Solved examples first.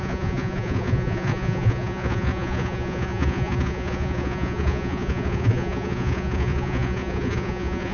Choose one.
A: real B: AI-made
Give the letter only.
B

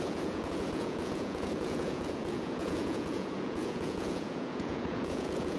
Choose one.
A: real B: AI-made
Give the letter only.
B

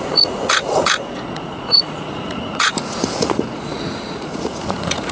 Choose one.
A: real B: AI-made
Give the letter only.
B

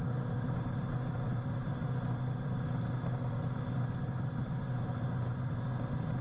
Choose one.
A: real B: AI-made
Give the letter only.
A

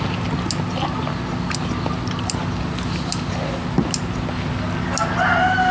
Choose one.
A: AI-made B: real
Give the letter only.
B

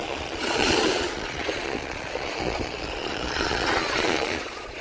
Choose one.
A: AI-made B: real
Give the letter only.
A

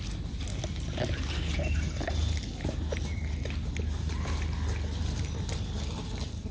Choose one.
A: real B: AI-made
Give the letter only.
A